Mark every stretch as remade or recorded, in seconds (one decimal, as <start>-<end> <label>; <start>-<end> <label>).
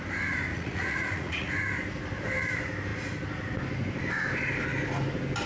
0.0-0.5 recorded; 0.5-1.5 remade; 1.5-5.5 recorded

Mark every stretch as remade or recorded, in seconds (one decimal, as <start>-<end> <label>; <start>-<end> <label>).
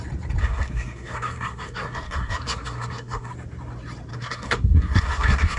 0.0-0.4 recorded; 0.4-3.3 remade; 3.3-4.1 recorded; 4.1-5.6 remade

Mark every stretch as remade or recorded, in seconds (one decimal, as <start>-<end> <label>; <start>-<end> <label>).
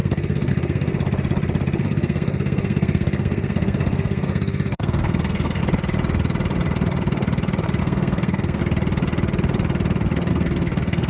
0.0-0.9 remade; 0.9-1.8 recorded; 1.8-5.6 remade; 5.6-7.8 recorded; 7.8-8.6 remade; 8.6-10.3 recorded; 10.3-11.1 remade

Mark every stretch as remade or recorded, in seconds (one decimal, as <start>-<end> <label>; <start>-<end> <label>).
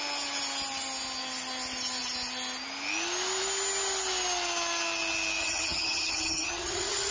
0.0-5.4 recorded; 5.4-7.1 remade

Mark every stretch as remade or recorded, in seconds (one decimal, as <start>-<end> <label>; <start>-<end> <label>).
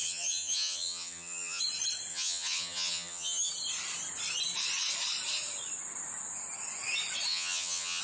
0.0-1.6 remade; 1.6-2.1 recorded; 2.1-3.5 remade; 3.5-7.3 recorded; 7.3-8.0 remade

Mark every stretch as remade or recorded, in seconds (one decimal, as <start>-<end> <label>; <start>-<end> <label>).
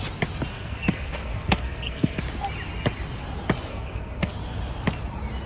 0.0-0.5 recorded; 0.5-2.2 remade; 2.2-3.7 recorded; 3.7-4.3 remade; 4.3-5.5 recorded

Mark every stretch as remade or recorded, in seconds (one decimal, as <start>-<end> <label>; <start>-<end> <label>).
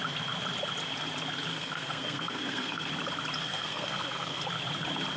0.0-1.5 recorded; 1.5-2.9 remade; 2.9-3.4 recorded; 3.4-4.4 remade; 4.4-5.2 recorded